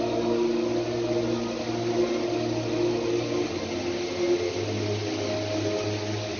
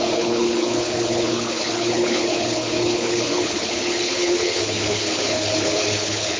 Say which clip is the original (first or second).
first